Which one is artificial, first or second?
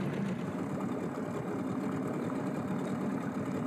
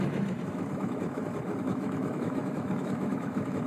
second